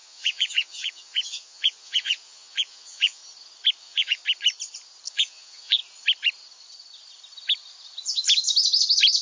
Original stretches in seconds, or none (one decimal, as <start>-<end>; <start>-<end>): 3.2-3.8; 4.2-5.1; 5.8-9.2